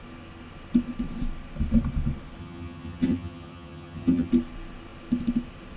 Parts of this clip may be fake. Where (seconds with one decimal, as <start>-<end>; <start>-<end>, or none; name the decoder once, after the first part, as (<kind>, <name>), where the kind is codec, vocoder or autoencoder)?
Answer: 2.4-4.3 (vocoder, HiFi-GAN)